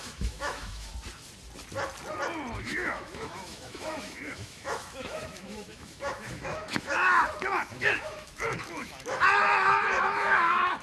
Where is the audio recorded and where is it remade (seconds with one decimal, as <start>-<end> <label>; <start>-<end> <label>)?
0.0-0.9 remade; 0.9-2.6 recorded; 2.6-10.8 remade